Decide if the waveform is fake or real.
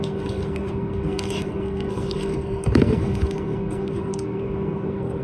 fake